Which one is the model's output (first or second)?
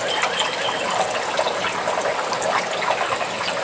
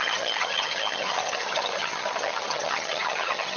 second